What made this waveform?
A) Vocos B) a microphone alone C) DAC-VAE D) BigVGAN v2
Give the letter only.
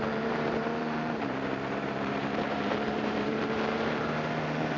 D